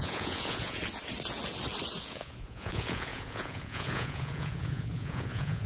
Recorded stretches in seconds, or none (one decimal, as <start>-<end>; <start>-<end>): 0.8-2.0